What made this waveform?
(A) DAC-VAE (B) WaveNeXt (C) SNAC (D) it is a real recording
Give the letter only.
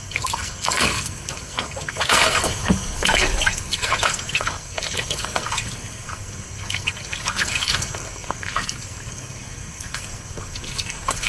C